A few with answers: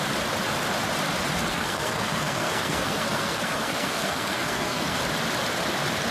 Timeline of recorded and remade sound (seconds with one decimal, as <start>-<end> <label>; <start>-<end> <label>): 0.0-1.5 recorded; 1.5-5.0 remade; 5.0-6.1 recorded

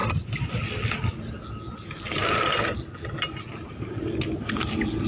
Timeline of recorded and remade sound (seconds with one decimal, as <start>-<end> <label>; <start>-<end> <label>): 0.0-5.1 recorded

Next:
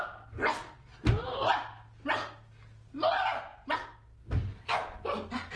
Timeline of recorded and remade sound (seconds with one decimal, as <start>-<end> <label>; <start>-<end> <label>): 0.0-5.6 recorded